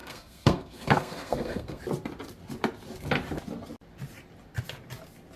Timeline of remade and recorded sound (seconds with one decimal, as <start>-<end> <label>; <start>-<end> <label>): 0.0-1.8 remade; 1.8-5.4 recorded